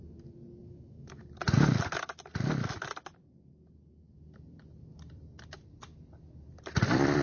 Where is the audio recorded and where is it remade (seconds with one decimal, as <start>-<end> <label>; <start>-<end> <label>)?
0.0-0.6 recorded; 0.6-1.2 remade; 1.2-7.2 recorded